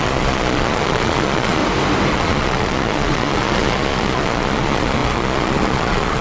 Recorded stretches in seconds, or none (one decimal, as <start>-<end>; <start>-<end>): 1.6-2.1